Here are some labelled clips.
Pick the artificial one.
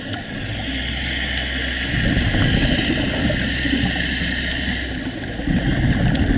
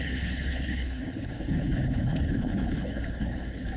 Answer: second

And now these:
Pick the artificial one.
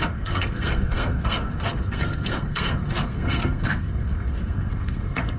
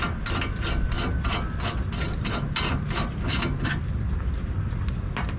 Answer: first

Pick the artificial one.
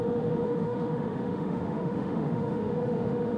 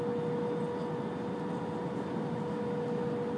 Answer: first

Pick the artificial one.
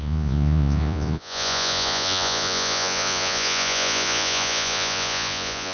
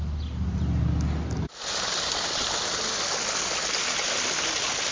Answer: first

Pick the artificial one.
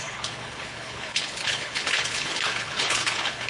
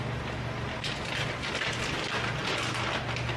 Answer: first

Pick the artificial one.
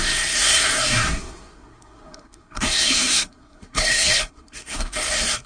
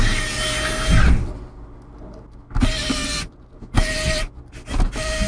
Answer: first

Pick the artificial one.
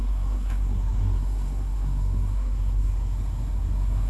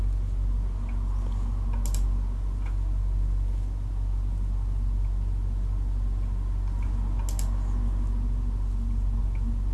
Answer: first